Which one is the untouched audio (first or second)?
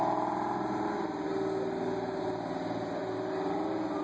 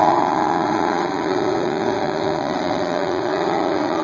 first